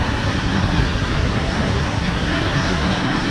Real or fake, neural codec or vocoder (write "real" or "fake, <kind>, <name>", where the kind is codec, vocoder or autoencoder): fake, codec, SNAC